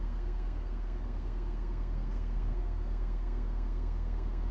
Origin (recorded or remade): remade